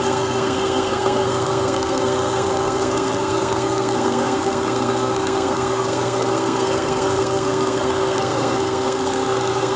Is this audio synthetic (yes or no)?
yes